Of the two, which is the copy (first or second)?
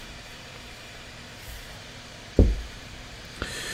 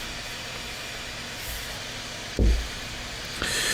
first